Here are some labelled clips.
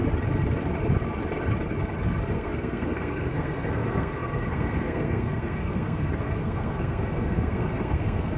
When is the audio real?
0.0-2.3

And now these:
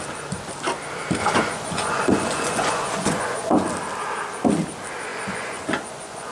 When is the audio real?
0.0-1.2; 3.5-5.1

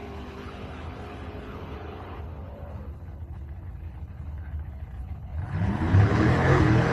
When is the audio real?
none

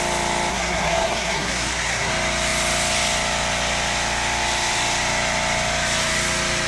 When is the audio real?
0.0-0.5; 2.1-6.7

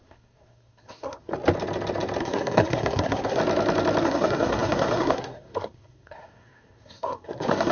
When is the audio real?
1.3-2.2; 3.4-4.0